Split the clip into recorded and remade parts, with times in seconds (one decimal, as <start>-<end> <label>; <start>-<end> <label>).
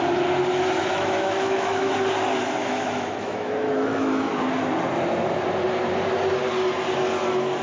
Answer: 0.0-0.8 recorded; 0.8-1.9 remade; 1.9-2.6 recorded; 2.6-4.3 remade; 4.3-7.6 recorded